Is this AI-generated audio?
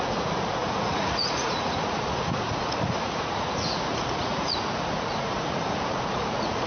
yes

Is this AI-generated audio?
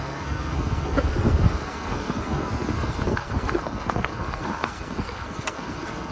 yes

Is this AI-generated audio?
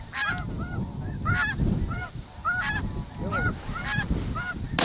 no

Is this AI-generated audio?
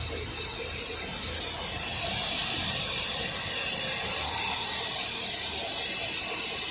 no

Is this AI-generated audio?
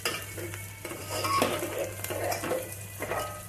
no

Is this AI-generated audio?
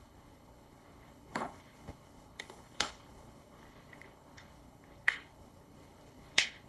yes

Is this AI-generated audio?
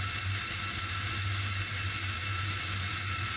no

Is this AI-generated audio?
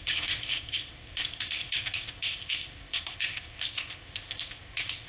yes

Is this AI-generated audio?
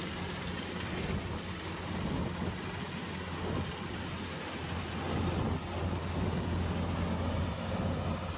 no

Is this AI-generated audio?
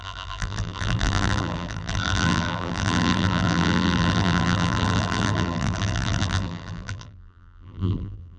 yes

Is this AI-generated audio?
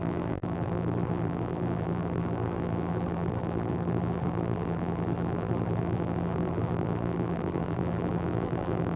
yes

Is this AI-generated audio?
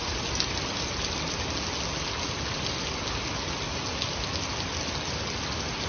no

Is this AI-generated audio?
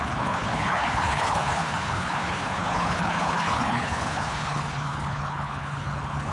yes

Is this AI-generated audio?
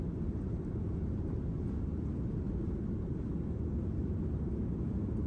no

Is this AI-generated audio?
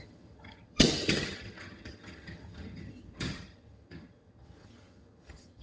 yes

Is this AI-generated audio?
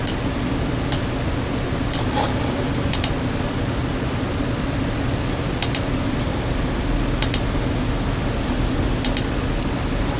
no